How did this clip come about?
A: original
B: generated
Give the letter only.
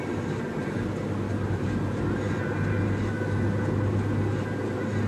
A